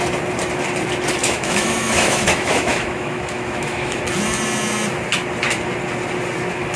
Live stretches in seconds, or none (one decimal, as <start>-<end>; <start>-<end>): 0.0-1.2; 4.0-6.8